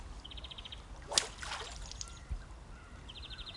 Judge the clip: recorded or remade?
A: recorded